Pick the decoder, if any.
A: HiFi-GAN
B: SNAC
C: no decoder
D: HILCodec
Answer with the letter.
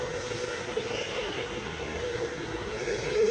B